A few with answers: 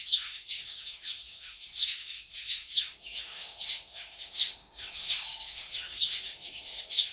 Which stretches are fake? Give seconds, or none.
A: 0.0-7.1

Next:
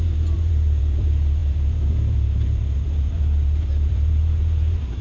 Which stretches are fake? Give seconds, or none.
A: 0.0-5.0

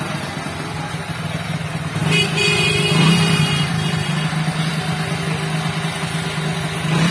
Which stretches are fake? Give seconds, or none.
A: none

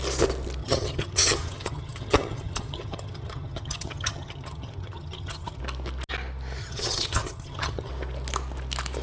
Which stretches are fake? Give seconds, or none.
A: 0.6-5.6; 6.6-7.9